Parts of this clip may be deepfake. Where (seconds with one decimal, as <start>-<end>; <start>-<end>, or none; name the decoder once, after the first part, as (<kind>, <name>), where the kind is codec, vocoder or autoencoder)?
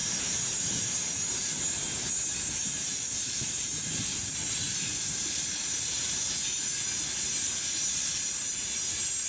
0.0-1.0 (vocoder, BigVGAN v2); 2.6-6.3